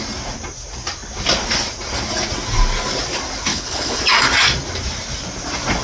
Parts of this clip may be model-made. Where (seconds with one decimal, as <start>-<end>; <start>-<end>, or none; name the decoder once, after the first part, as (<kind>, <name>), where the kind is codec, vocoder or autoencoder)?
3.5-4.0 (codec, HILCodec)